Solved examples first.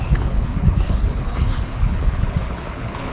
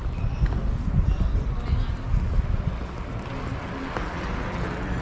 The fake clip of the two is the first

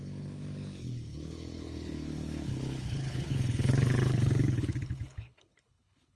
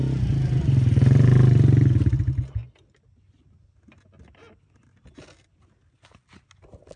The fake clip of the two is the first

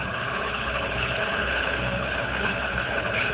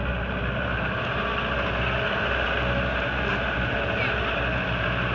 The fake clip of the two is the first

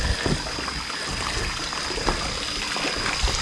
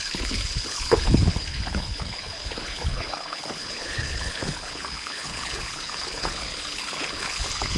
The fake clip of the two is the second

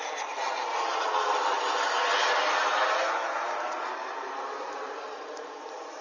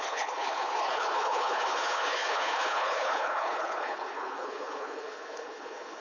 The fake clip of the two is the second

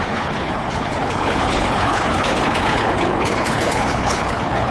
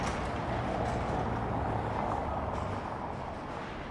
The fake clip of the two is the first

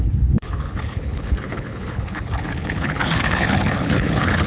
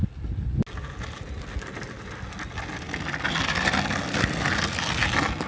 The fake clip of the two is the first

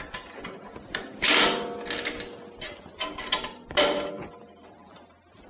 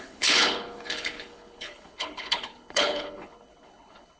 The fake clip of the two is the second